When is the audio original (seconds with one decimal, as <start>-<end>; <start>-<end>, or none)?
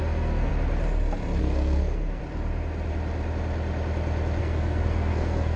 0.5-1.4; 2.2-4.4